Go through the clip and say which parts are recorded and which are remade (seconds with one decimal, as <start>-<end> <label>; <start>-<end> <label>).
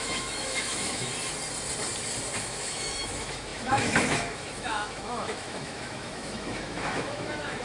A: 0.0-1.1 remade; 1.1-2.4 recorded; 2.4-7.6 remade